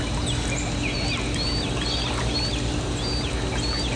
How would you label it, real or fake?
real